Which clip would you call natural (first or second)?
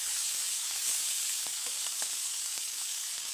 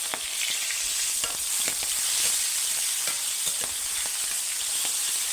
second